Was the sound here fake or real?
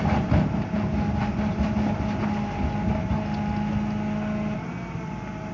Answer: real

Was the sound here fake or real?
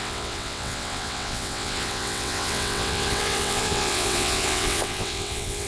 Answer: fake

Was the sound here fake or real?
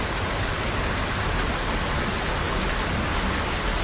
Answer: real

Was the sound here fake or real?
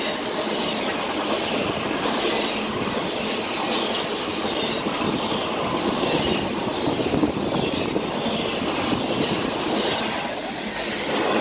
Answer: real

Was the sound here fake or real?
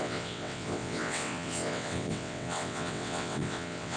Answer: fake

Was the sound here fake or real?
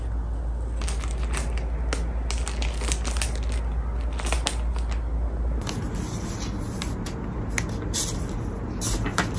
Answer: real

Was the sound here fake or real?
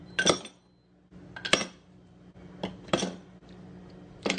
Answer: real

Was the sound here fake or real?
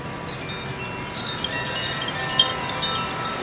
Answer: real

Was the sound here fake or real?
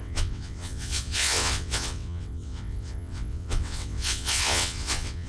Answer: fake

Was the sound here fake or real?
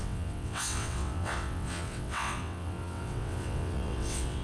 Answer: fake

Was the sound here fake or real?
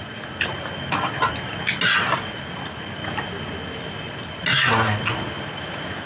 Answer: real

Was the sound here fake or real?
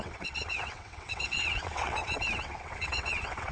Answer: fake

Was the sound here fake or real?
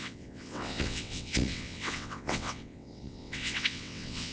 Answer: fake